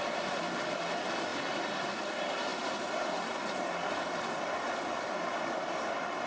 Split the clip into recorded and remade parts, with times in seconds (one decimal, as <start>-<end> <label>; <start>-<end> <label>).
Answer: 0.0-6.3 recorded

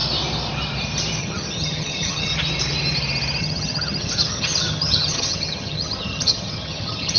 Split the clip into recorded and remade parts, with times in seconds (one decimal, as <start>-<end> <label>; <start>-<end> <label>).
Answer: 0.0-1.2 recorded; 1.2-2.3 remade; 2.3-3.4 recorded; 3.4-7.2 remade

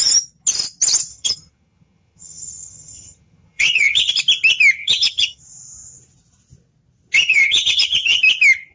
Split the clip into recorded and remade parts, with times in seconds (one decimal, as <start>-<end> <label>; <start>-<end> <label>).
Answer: 0.0-1.1 recorded; 1.1-4.1 remade; 4.1-4.8 recorded; 4.8-5.4 remade; 5.4-7.2 recorded; 7.2-8.2 remade; 8.2-8.7 recorded

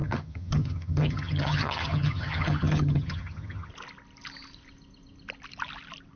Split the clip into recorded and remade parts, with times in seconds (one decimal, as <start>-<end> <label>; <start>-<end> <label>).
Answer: 0.0-3.7 remade; 3.7-6.2 recorded